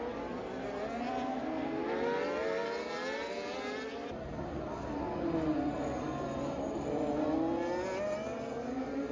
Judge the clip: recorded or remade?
recorded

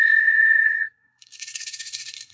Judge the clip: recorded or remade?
remade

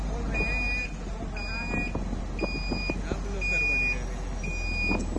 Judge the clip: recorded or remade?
recorded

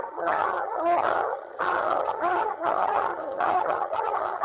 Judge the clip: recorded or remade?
remade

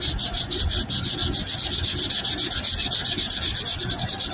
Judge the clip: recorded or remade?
recorded